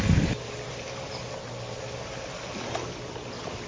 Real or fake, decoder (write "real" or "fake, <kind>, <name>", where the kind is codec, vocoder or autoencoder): real